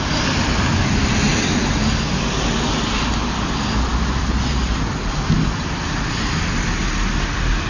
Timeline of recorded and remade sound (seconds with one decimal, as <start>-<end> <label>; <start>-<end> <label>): 0.0-7.7 recorded